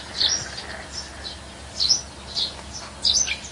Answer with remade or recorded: recorded